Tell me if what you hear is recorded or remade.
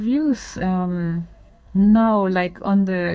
remade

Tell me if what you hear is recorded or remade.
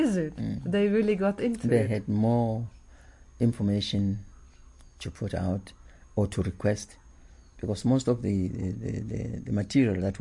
recorded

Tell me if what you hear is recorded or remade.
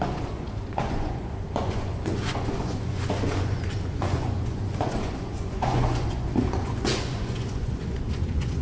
remade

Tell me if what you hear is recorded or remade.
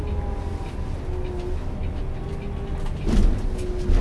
recorded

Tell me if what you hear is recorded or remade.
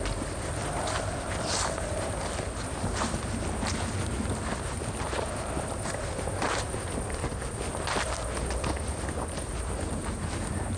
recorded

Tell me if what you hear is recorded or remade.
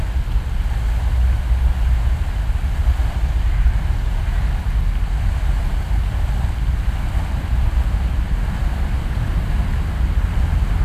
recorded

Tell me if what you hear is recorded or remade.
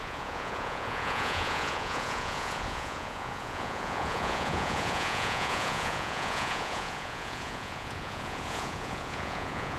remade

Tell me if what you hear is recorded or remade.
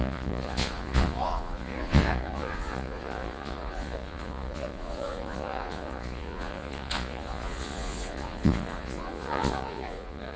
remade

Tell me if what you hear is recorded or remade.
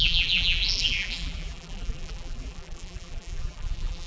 remade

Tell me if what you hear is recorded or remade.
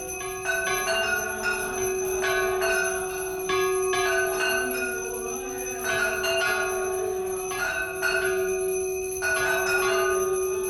recorded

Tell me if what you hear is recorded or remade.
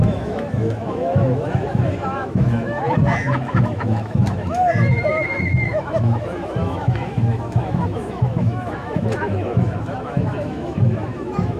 remade